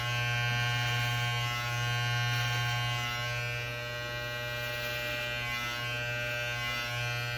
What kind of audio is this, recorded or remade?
recorded